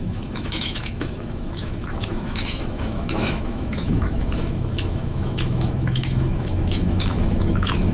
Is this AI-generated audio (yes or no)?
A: yes